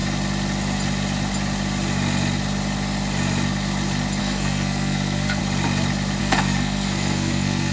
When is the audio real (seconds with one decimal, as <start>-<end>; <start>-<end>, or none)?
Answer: 0.0-4.2; 5.4-6.2